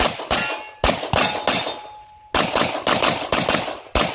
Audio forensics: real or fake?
real